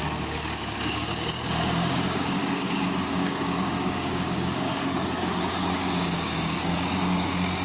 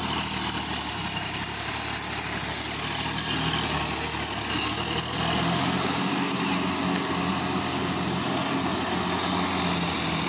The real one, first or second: second